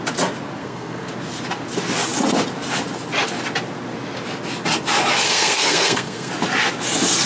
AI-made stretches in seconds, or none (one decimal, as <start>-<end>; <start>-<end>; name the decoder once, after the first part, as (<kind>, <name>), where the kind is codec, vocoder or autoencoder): 0.6-1.1 (codec, SNAC); 5.2-6.3